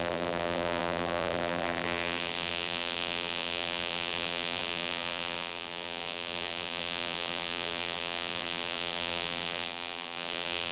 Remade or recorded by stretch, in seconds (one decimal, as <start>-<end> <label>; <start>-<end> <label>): 0.0-10.7 remade